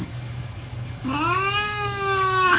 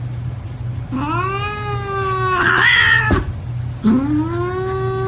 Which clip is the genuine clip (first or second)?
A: second